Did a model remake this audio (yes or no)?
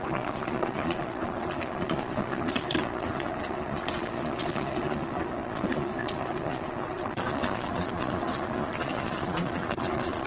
yes